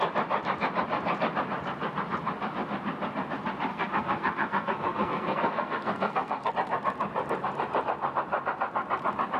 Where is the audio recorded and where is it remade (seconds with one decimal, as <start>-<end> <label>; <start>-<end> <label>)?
0.0-3.7 recorded; 3.7-6.5 remade; 6.5-9.4 recorded